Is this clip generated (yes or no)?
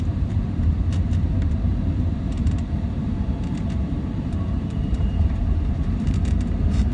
yes